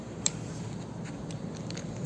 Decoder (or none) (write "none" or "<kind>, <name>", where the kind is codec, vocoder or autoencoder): none